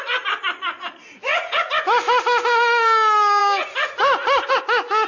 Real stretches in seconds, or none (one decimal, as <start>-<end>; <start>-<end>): 0.0-0.7; 1.7-5.1